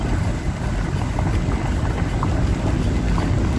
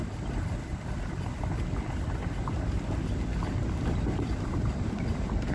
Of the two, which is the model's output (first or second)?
second